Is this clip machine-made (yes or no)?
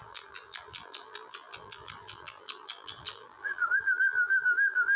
yes